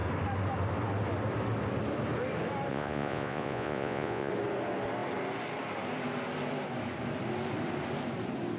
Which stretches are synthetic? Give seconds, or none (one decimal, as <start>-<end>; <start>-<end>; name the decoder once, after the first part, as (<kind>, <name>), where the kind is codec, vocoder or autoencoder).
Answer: 2.7-4.3 (vocoder, Vocos)